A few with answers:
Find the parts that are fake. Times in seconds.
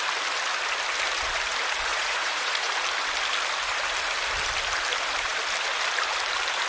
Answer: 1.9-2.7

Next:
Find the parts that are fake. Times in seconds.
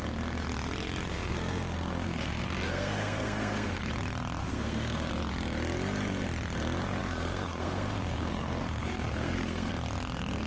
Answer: 1.1-3.8; 4.4-5.1; 7.0-9.7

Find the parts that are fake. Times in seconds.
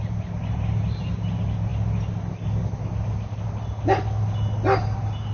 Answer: none